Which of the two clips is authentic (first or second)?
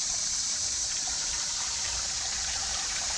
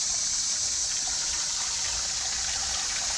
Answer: second